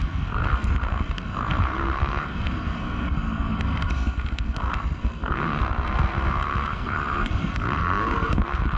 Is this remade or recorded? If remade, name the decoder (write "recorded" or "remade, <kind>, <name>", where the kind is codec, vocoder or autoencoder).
remade, codec, SNAC